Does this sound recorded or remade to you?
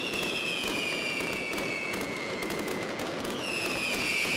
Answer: remade